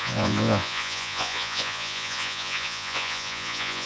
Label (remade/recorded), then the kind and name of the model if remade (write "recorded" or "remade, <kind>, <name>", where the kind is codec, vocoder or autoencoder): remade, vocoder, Vocos